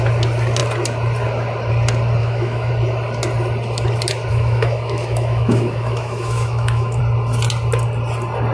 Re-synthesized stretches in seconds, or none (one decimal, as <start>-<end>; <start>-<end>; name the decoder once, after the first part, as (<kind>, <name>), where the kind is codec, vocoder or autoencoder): 2.2-2.7 (autoencoder, DAC-VAE); 4.3-7.0